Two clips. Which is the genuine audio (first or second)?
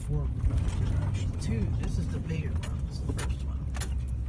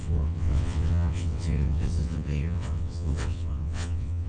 first